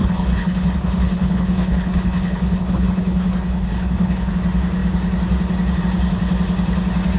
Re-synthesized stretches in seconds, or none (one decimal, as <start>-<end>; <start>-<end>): 0.0-4.3